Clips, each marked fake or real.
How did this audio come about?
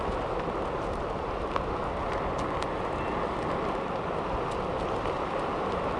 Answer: real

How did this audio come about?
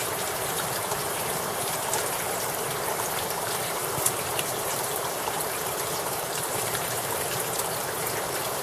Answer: fake